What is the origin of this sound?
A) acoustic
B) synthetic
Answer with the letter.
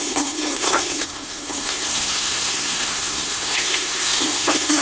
B